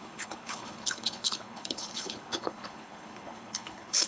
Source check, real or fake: fake